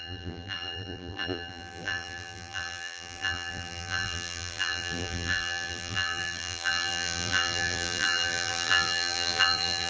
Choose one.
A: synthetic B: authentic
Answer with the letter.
A